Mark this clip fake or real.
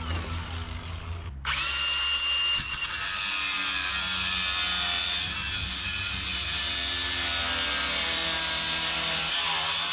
real